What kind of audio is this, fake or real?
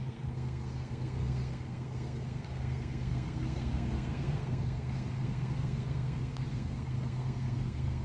fake